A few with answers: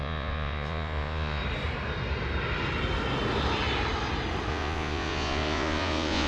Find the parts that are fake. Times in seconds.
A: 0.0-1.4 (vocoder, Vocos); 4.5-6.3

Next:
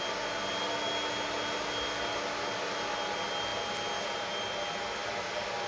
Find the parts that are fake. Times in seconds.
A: none

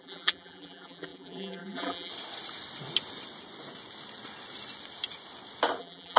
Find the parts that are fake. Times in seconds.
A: 0.0-2.1 (vocoder, BigVGAN v2); 5.8-6.2

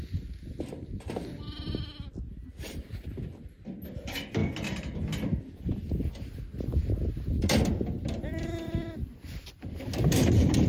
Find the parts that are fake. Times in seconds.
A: none

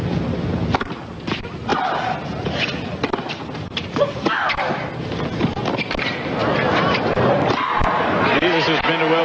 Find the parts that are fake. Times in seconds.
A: 3.8-4.8 (vocoder, BigVGAN v2)